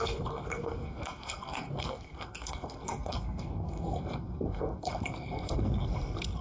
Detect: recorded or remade remade